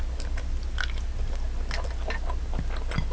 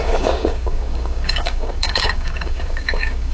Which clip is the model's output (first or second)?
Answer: second